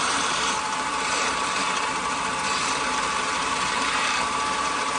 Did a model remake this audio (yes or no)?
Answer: yes